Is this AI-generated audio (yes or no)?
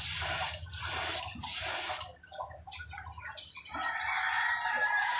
no